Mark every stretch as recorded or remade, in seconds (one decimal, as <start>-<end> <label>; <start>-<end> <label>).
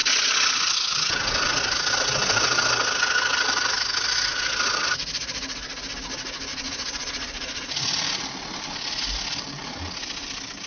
0.0-6.5 recorded; 6.5-7.7 remade; 7.7-10.7 recorded